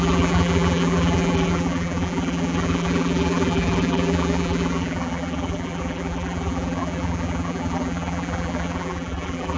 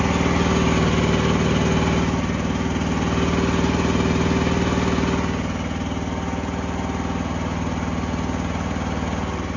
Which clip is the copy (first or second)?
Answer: first